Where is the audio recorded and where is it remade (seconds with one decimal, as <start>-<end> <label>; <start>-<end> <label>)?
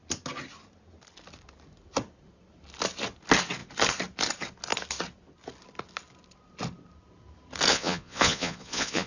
0.0-7.7 recorded; 7.7-9.1 remade